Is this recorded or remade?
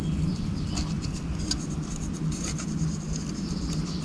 recorded